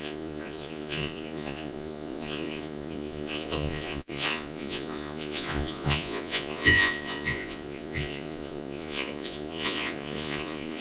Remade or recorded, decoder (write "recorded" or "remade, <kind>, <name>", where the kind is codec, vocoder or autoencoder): remade, vocoder, Vocos